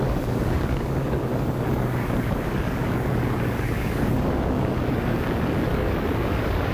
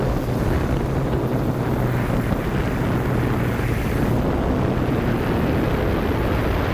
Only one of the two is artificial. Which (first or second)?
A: first